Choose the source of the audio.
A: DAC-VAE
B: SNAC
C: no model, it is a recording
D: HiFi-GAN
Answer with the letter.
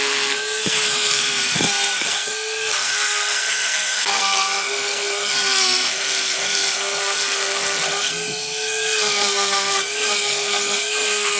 B